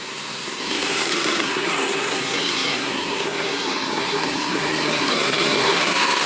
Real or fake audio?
fake